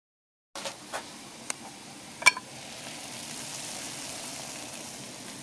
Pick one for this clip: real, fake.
real